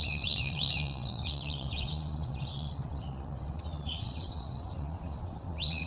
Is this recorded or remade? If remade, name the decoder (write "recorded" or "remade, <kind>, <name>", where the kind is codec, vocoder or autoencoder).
remade, vocoder, WaveNeXt